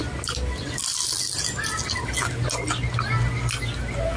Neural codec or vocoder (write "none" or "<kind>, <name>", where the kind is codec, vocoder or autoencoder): none